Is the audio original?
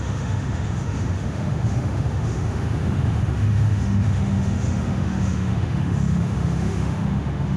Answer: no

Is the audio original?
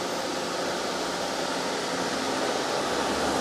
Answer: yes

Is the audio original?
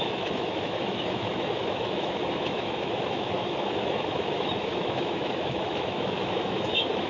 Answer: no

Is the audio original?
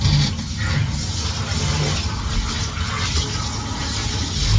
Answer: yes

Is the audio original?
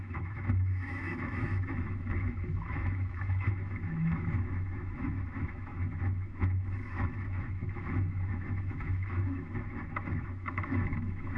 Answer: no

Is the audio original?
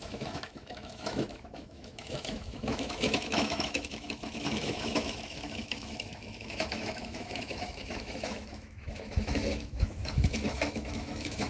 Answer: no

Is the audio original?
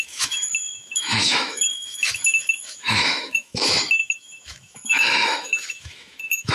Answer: no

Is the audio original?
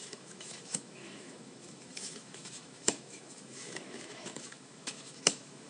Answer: no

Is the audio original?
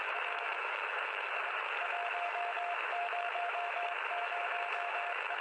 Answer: no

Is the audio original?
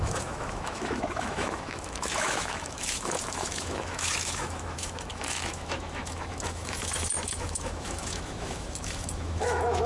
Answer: no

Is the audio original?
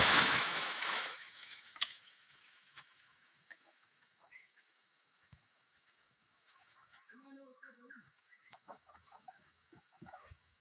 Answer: no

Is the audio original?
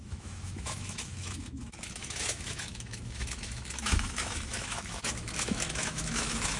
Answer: no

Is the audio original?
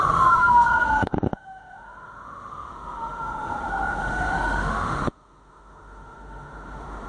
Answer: no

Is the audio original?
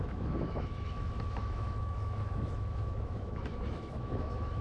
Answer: no